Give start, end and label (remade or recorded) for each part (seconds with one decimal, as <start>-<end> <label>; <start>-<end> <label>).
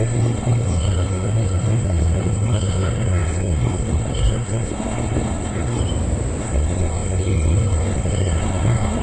0.0-5.8 remade; 5.8-6.4 recorded; 6.4-9.0 remade